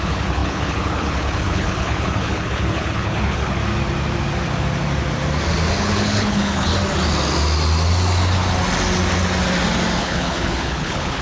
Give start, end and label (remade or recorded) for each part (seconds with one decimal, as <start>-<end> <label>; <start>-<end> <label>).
0.0-3.6 remade; 3.6-5.8 recorded; 5.8-6.7 remade; 6.7-10.0 recorded; 10.0-11.2 remade